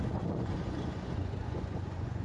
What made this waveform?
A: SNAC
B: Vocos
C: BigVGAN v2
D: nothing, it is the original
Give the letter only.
B